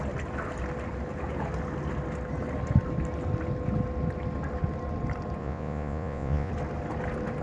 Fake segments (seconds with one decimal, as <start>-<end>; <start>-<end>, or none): 5.4-6.5